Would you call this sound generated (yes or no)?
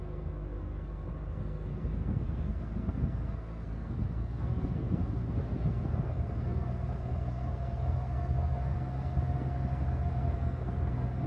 yes